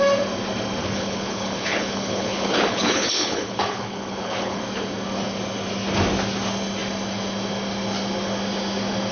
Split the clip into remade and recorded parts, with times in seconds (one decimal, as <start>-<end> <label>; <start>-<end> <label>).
0.0-0.8 recorded; 0.8-4.6 remade; 4.6-9.1 recorded